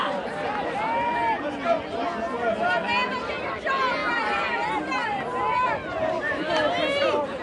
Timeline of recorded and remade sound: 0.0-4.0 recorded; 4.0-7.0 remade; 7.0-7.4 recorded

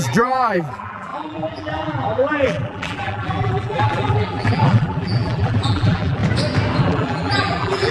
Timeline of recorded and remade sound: 0.0-6.2 remade; 6.2-6.8 recorded; 6.8-7.9 remade